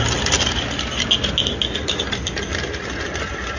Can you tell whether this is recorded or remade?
recorded